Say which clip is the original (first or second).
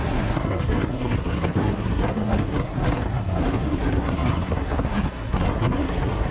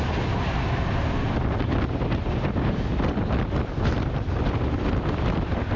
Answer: second